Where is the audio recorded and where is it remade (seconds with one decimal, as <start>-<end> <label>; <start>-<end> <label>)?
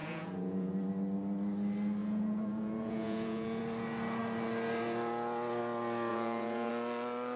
0.0-0.7 remade; 0.7-2.0 recorded; 2.0-3.6 remade; 3.6-6.1 recorded; 6.1-6.7 remade; 6.7-7.4 recorded